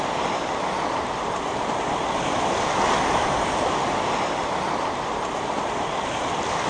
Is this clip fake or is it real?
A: real